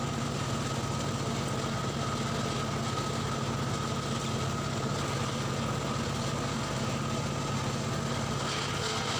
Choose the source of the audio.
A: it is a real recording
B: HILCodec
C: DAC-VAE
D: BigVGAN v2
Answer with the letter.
A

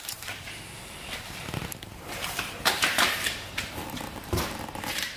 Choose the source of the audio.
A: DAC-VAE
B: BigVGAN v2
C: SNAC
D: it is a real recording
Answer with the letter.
B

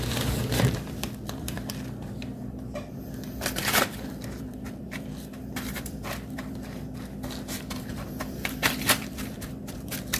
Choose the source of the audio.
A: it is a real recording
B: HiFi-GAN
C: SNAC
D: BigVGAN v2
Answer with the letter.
D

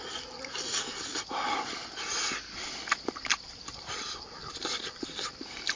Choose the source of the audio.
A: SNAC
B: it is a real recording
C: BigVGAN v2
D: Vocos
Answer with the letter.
C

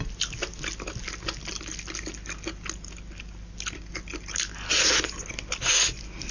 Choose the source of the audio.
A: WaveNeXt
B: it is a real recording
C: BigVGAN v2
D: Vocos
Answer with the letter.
B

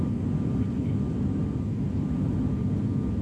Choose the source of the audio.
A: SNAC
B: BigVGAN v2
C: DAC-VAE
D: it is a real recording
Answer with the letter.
D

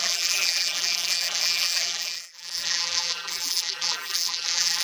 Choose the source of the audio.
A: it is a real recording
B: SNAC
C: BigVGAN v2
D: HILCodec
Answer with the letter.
C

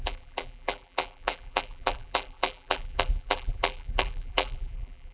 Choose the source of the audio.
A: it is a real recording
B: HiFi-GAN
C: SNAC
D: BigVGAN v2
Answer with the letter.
D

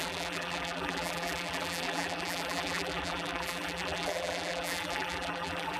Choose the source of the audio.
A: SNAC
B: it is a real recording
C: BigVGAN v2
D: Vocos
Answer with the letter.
C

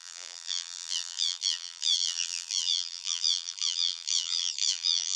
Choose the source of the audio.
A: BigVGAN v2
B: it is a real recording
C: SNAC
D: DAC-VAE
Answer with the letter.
A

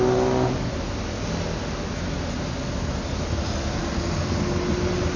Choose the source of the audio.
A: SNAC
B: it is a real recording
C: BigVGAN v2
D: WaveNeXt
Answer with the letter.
B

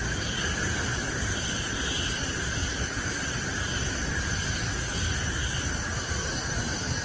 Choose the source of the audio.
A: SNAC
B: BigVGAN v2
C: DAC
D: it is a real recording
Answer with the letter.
D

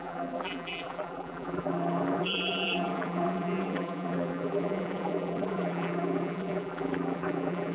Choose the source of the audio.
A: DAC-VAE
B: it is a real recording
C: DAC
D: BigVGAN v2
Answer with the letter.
D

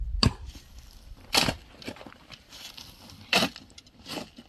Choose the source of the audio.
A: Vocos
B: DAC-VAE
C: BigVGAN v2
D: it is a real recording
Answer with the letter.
C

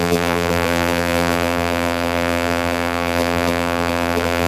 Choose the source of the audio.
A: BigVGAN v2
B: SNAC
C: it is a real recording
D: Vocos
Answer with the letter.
A